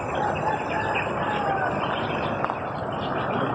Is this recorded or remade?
recorded